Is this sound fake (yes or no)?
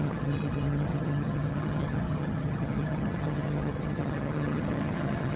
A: yes